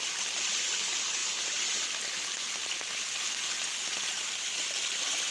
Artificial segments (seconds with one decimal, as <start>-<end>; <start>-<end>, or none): none